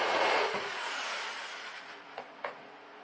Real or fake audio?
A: fake